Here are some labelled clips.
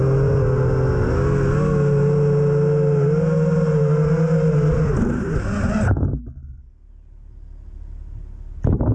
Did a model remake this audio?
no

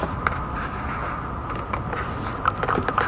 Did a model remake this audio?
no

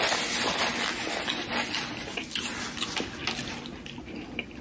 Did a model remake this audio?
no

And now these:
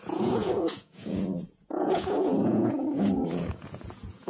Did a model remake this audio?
yes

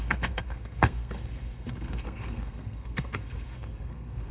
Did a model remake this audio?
yes